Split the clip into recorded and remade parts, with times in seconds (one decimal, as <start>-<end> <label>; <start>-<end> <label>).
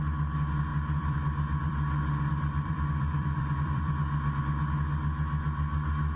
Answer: 0.0-0.7 recorded; 0.7-4.4 remade; 4.4-6.2 recorded